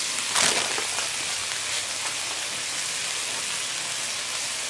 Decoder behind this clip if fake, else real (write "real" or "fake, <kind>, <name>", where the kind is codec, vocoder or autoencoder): real